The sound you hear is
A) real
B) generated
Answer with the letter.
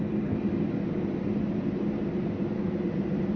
A